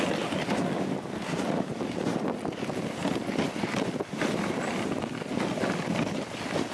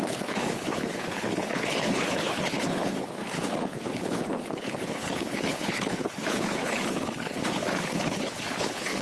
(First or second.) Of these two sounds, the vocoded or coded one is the second